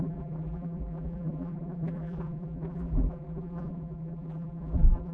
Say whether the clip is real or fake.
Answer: fake